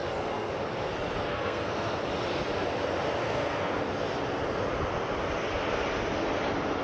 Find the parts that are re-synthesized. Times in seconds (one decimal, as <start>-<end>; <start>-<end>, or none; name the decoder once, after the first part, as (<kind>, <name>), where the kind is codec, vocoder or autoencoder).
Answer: 0.0-0.5 (codec, SNAC); 1.2-2.0; 3.2-3.7